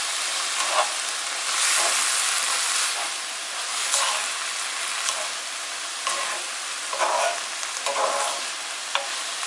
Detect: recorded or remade recorded